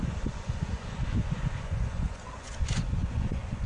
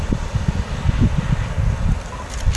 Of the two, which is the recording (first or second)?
second